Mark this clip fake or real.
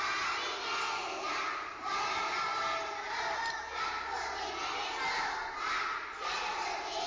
real